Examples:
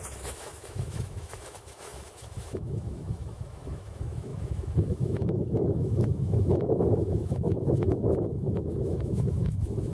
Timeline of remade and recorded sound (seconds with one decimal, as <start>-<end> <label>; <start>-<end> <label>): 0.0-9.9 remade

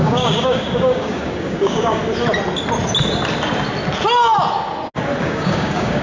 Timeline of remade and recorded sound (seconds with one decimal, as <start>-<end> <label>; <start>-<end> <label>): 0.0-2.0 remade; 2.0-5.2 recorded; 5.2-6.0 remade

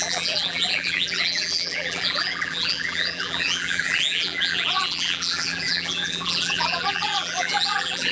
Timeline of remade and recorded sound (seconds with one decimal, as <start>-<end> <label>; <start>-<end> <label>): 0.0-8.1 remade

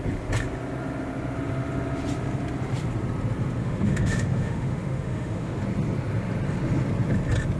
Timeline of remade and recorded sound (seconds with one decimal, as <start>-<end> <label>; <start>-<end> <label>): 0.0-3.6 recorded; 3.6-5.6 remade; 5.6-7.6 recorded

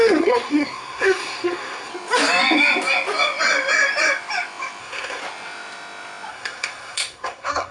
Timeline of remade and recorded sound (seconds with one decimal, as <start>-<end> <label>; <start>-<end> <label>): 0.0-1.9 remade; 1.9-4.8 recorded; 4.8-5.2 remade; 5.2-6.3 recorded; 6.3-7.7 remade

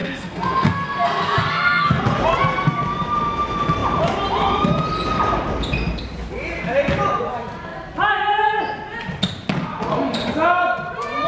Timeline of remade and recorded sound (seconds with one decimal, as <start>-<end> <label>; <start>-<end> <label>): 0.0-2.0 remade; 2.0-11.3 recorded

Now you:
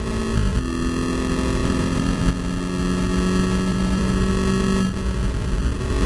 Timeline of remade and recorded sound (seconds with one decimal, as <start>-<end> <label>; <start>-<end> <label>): 0.0-1.6 recorded; 1.6-2.2 remade; 2.2-3.7 recorded; 3.7-4.3 remade; 4.3-6.1 recorded